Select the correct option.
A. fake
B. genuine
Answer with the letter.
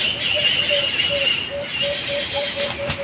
B